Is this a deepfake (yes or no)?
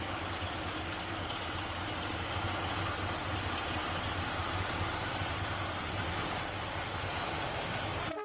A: no